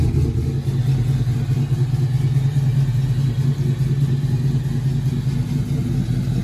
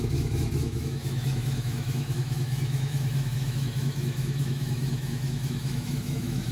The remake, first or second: second